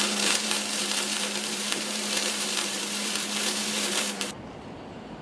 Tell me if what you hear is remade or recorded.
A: remade